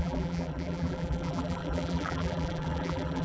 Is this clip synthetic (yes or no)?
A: yes